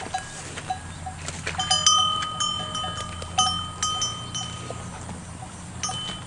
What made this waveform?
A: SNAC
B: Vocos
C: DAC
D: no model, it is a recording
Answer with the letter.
D